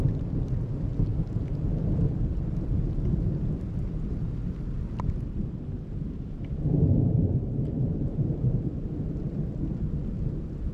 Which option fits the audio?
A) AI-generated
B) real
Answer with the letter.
B